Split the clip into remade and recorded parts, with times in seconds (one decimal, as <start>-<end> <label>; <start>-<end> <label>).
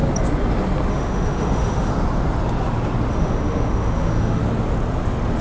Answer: 0.0-0.9 recorded; 0.9-1.9 remade; 1.9-3.1 recorded; 3.1-4.4 remade; 4.4-5.4 recorded